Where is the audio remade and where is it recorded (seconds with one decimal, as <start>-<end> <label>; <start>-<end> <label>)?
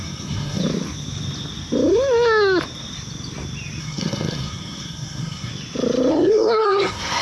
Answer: 0.0-0.6 remade; 0.6-3.8 recorded; 3.8-5.5 remade; 5.5-6.1 recorded; 6.1-7.2 remade